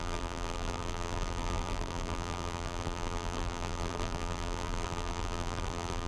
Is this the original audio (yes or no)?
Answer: no